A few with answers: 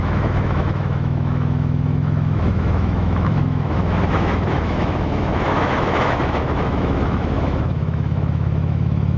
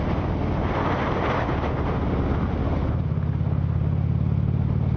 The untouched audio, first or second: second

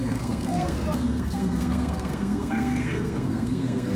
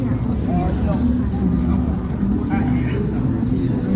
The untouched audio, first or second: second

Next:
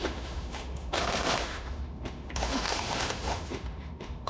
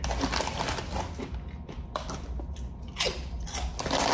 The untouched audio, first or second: second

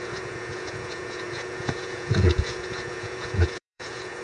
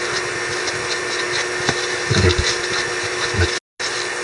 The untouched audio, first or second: second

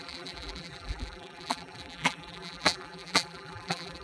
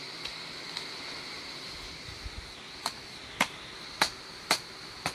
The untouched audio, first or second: second